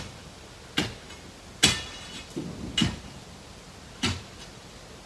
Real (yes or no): yes